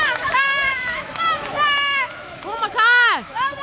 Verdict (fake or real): fake